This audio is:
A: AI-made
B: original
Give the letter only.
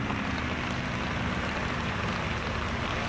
B